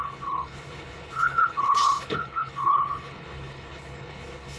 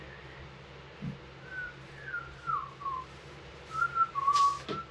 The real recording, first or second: second